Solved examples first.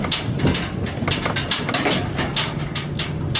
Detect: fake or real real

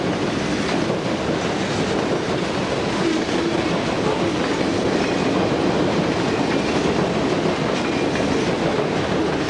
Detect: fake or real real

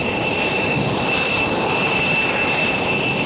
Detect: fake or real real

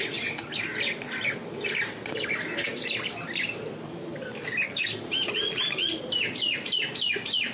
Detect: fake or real real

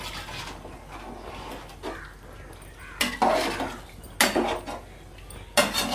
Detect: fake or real real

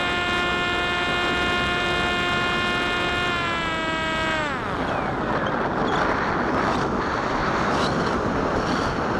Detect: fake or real real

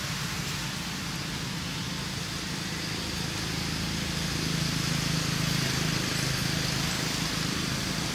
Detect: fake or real real